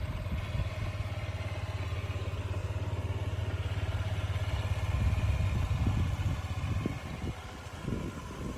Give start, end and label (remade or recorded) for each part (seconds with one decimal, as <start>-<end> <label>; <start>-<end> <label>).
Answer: 0.0-8.6 recorded